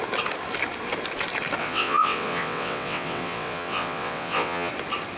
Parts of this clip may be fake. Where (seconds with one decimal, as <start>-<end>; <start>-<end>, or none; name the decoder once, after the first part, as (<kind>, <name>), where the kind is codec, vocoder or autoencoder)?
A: 1.6-4.7 (vocoder, WaveNeXt)